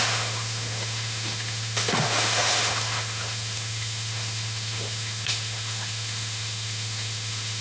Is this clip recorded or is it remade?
remade